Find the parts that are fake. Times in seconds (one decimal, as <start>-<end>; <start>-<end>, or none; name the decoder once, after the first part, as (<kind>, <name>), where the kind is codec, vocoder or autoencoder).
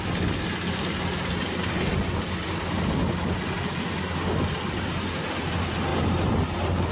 none